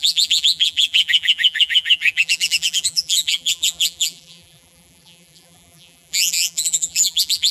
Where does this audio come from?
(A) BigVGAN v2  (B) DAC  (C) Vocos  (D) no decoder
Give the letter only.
A